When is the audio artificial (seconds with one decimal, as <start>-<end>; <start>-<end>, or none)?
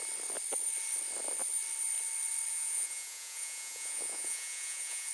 2.5-5.1